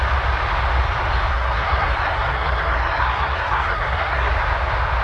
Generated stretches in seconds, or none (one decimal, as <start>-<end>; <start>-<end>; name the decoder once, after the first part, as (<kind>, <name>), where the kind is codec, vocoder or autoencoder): 1.3-4.3 (codec, SNAC)